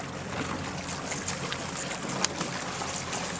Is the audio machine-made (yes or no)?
no